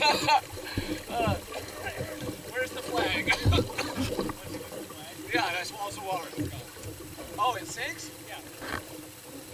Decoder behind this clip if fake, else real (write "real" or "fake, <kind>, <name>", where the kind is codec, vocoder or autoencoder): real